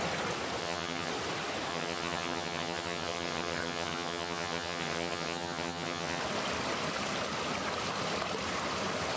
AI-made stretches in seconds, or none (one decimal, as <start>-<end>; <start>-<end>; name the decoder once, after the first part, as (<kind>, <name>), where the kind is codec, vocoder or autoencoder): 0.6-1.1 (vocoder, HiFi-GAN); 1.7-6.2